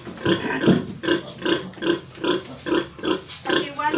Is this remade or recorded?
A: recorded